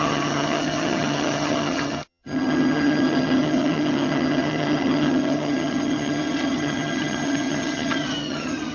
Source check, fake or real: fake